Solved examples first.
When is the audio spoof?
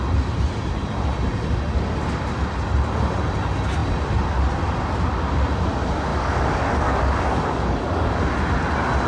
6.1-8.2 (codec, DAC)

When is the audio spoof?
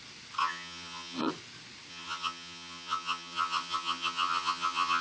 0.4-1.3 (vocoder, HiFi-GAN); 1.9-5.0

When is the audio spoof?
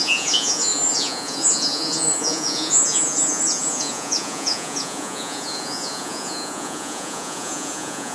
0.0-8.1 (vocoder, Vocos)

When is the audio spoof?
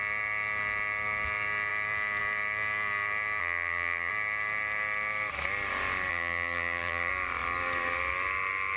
3.4-4.1 (vocoder, BigVGAN v2); 6.1-7.1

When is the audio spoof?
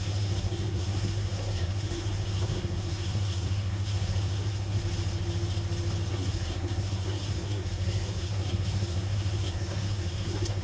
0.0-4.8 (codec, SNAC); 6.1-10.6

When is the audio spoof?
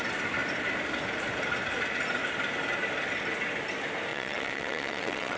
4.1-5.4 (vocoder, WaveNeXt)